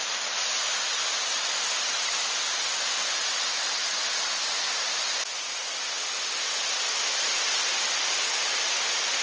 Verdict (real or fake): real